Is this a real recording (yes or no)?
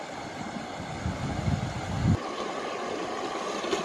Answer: yes